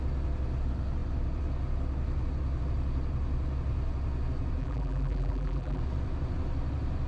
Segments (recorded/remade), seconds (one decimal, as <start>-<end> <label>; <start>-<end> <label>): 0.0-4.6 recorded; 4.6-5.8 remade; 5.8-7.1 recorded